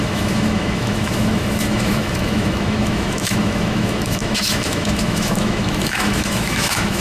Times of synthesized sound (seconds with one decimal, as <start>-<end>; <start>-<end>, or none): 0.0-7.0